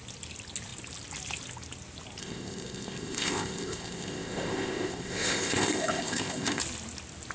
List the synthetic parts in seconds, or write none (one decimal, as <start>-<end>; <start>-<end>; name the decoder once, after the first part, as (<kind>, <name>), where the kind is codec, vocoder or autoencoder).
2.2-6.6 (codec, ZipCodec)